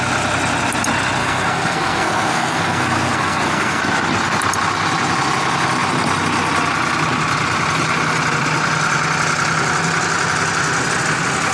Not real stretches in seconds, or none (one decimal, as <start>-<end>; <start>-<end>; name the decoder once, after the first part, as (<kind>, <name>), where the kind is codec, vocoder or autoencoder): 1.2-3.8 (codec, SNAC)